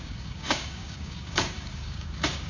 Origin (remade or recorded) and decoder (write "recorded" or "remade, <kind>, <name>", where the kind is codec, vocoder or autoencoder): remade, codec, DAC